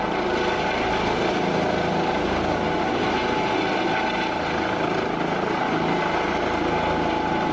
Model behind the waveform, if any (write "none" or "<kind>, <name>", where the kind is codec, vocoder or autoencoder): none